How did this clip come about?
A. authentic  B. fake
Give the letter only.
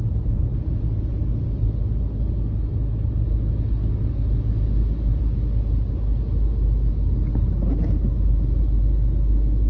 A